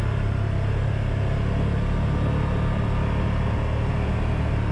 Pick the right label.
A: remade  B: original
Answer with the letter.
B